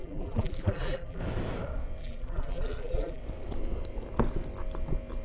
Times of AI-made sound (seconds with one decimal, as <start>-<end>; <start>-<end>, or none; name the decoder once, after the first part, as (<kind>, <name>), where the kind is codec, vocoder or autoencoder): 0.0-1.2 (vocoder, BigVGAN v2); 2.0-3.2